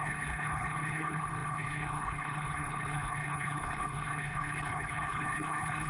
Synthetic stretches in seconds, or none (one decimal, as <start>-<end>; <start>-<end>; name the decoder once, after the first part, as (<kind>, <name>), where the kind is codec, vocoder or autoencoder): 0.0-5.9 (codec, HILCodec)